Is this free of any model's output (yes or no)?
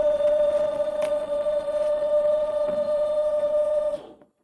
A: no